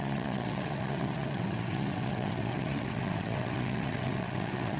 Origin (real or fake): fake